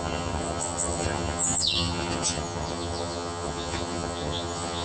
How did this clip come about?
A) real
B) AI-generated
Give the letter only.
B